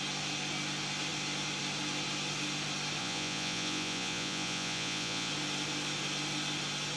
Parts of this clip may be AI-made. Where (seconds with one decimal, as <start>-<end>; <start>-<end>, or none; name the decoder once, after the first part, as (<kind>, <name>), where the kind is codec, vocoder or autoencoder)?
3.0-5.3 (vocoder, Vocos)